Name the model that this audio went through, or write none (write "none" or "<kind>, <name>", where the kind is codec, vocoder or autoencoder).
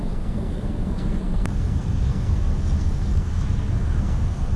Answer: codec, SNAC